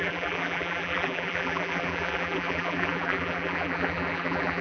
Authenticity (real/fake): fake